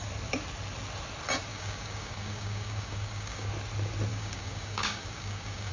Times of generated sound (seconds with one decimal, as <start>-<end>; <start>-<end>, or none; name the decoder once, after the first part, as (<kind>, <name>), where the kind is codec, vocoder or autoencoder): 1.5-3.5 (codec, DAC); 4.1-5.7